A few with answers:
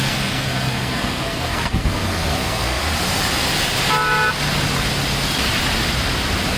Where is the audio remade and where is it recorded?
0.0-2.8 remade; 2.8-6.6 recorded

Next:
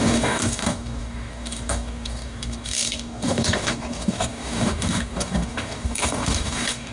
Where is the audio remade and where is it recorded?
0.0-6.9 remade